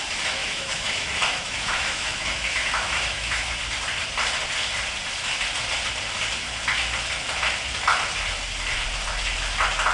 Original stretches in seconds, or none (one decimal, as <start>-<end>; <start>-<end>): 0.0-0.4; 3.5-9.9